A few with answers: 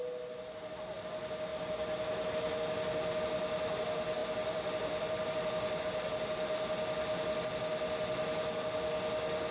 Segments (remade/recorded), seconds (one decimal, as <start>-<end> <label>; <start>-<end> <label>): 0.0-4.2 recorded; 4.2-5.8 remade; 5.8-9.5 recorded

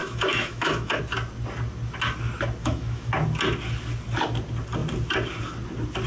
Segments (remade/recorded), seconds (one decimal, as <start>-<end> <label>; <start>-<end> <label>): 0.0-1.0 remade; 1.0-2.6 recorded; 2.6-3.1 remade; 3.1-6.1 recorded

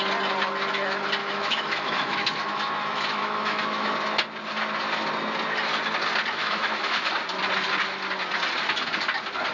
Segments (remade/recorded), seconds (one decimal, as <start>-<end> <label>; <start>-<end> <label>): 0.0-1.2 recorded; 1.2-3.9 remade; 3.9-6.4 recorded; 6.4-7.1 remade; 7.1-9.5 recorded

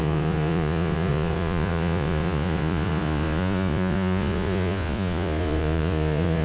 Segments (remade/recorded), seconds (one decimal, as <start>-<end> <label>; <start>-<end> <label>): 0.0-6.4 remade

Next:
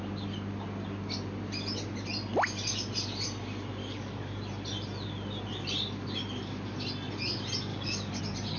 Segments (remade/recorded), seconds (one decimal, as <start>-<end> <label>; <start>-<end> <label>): 0.0-3.8 recorded; 3.8-4.4 remade; 4.4-7.7 recorded; 7.7-8.2 remade; 8.2-8.6 recorded